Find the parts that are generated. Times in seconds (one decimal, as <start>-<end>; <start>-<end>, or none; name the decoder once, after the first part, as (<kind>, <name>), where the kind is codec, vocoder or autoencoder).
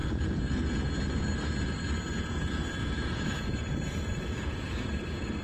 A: 0.0-0.9 (vocoder, Vocos); 2.1-5.4